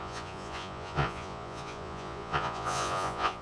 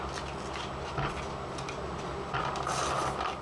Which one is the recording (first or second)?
second